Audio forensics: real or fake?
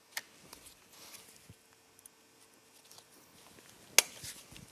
real